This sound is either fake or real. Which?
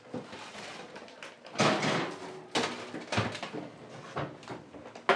real